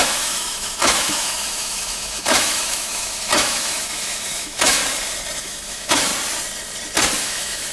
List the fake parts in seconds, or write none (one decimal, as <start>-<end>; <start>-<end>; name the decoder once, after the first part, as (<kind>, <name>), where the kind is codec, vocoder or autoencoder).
0.0-4.8 (autoencoder, DAC-VAE); 5.4-6.1; 7.2-7.7